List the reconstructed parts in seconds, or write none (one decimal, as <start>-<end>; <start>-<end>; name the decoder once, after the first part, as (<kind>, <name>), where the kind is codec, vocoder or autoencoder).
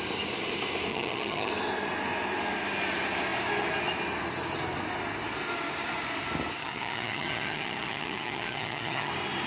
0.9-1.5 (vocoder, HiFi-GAN); 6.6-9.1